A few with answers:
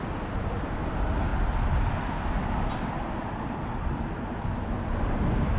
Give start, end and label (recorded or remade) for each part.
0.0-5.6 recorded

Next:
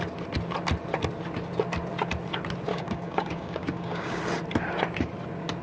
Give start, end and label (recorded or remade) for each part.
0.0-2.7 recorded; 2.7-4.2 remade; 4.2-5.6 recorded

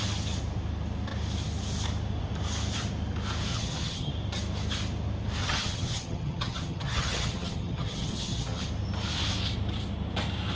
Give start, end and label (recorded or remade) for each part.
0.0-3.5 recorded; 3.5-4.1 remade; 4.1-5.4 recorded; 5.4-8.6 remade; 8.6-10.6 recorded

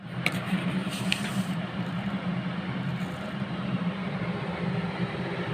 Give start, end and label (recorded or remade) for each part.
0.0-2.3 remade; 2.3-3.2 recorded; 3.2-5.5 remade

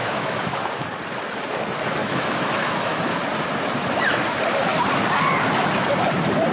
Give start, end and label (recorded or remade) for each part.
0.0-0.7 remade; 0.7-2.0 recorded; 2.0-3.2 remade; 3.2-6.5 recorded

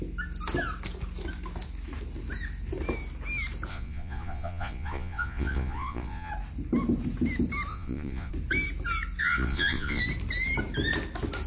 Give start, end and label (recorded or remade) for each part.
0.0-3.7 recorded; 3.7-6.3 remade; 6.3-7.7 recorded; 7.7-8.3 remade; 8.3-9.2 recorded; 9.2-10.0 remade; 10.0-11.5 recorded

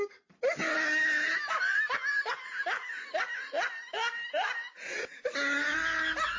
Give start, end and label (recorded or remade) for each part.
0.0-6.4 recorded

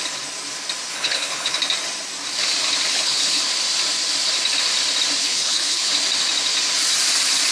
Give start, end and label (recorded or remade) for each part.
0.0-0.9 recorded; 0.9-1.6 remade; 1.6-2.9 recorded; 2.9-3.4 remade; 3.4-5.2 recorded; 5.2-5.9 remade; 5.9-7.5 recorded